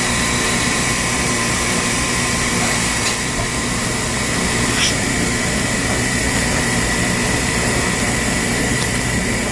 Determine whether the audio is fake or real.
fake